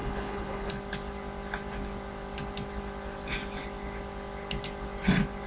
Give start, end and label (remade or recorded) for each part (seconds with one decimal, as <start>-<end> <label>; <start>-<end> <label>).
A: 0.0-0.7 remade; 0.7-5.5 recorded